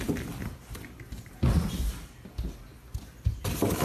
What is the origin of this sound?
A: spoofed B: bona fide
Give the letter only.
B